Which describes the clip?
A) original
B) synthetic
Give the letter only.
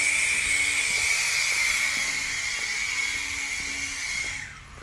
A